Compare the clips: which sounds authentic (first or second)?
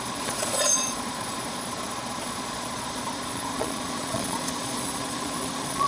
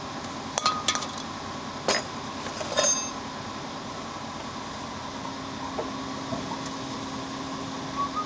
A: second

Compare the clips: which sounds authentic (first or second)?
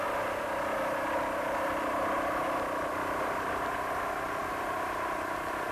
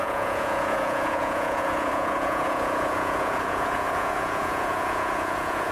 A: first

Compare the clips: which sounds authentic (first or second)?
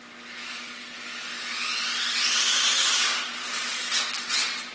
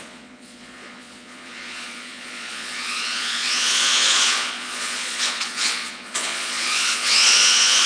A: first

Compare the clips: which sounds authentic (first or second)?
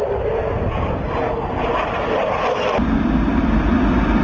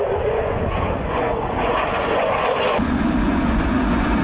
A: first